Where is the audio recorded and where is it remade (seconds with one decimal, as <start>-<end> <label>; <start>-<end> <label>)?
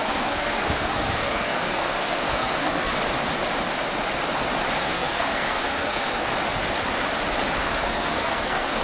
0.0-2.9 remade; 2.9-4.8 recorded; 4.8-6.3 remade; 6.3-7.6 recorded; 7.6-8.8 remade